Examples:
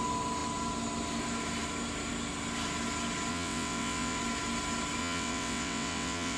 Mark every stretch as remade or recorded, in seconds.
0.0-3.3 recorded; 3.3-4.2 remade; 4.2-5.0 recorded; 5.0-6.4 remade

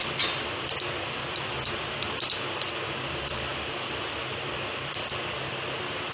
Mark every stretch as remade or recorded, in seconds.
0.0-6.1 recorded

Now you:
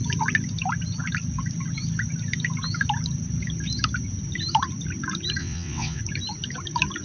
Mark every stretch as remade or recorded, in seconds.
0.0-5.4 recorded; 5.4-6.0 remade; 6.0-7.0 recorded

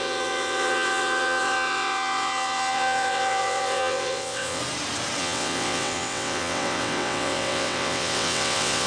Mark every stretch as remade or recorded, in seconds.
0.0-4.6 remade; 4.6-5.2 recorded; 5.2-8.9 remade

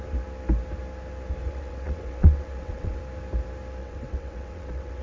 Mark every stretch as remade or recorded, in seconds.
0.0-1.4 recorded; 1.4-3.0 remade; 3.0-3.8 recorded; 3.8-5.0 remade

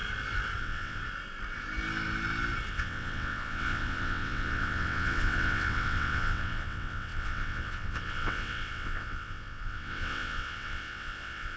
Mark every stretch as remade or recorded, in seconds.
0.0-0.6 recorded; 0.6-1.0 remade; 1.0-2.7 recorded; 2.7-11.6 remade

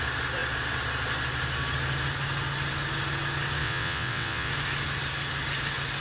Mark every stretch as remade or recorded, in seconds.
0.0-3.6 recorded; 3.6-4.5 remade; 4.5-6.0 recorded